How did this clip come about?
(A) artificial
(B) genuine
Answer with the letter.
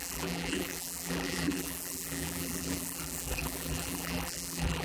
A